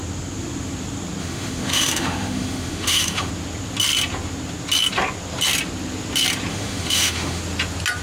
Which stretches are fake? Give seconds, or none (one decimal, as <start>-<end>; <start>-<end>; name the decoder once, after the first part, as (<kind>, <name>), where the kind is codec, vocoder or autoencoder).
1.2-3.3 (autoencoder, DAC-VAE); 6.5-7.4